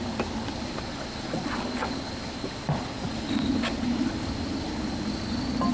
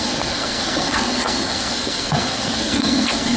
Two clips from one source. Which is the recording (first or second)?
first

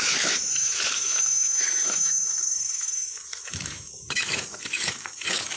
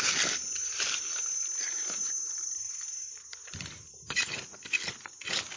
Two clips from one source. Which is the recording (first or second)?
second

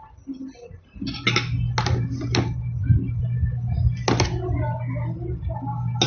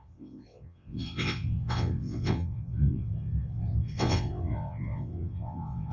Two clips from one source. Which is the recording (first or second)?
first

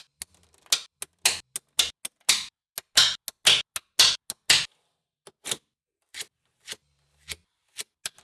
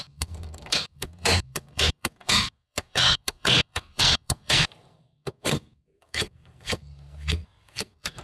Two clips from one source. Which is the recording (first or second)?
first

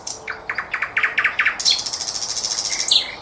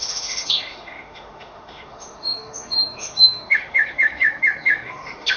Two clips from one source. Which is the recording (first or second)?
first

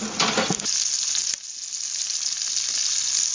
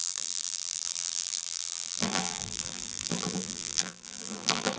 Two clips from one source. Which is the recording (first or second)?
first